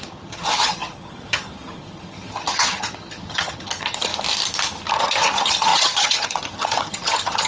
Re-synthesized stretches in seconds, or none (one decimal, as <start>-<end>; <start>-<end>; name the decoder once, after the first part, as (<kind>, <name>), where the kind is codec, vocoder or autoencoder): 0.0-4.1 (vocoder, HiFi-GAN); 5.0-7.5